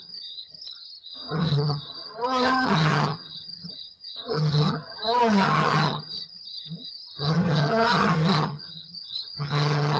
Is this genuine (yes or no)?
no